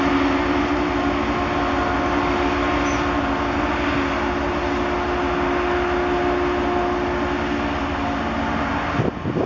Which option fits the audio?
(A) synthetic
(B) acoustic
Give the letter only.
B